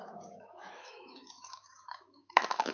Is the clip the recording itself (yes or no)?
no